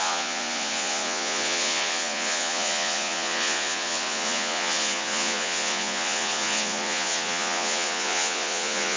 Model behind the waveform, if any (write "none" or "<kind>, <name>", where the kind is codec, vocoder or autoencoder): vocoder, Vocos